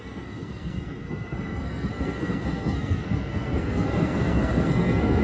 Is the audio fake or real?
fake